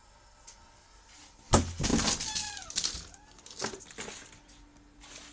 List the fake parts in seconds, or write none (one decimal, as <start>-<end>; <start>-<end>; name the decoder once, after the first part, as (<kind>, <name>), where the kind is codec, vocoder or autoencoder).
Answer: none